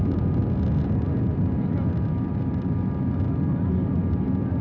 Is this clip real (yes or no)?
yes